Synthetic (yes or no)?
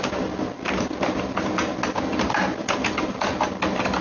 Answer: no